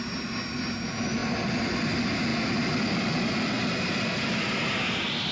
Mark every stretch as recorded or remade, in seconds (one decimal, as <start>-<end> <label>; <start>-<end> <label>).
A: 0.0-5.3 recorded